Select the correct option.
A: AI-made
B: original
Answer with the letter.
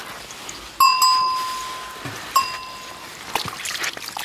B